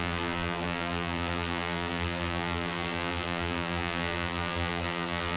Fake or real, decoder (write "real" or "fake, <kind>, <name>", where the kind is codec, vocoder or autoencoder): fake, vocoder, BigVGAN v2